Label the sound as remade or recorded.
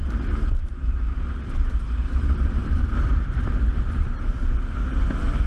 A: recorded